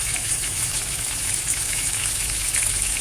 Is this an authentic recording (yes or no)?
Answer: no